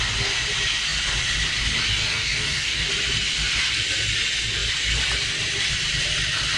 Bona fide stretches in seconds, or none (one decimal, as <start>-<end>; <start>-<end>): 0.0-1.9; 2.9-6.6